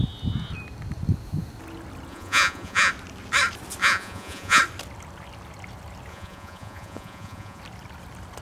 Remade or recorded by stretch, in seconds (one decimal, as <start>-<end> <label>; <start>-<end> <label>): 0.0-2.1 recorded; 2.1-2.9 remade; 2.9-3.8 recorded; 3.8-4.6 remade; 4.6-6.1 recorded; 6.1-7.6 remade; 7.6-8.4 recorded

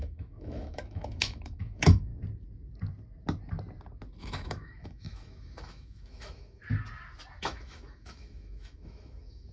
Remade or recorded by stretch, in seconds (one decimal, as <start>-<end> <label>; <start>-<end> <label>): 0.0-2.1 remade; 2.1-4.2 recorded; 4.2-6.6 remade; 6.6-7.4 recorded; 7.4-9.5 remade

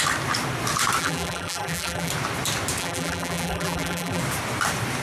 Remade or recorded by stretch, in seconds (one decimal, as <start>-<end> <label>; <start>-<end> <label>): 0.0-1.0 recorded; 1.0-2.1 remade; 2.1-2.8 recorded; 2.8-4.2 remade; 4.2-5.0 recorded